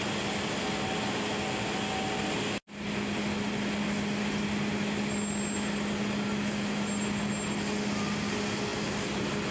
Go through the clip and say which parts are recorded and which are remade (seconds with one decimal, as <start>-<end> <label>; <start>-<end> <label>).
0.0-9.5 recorded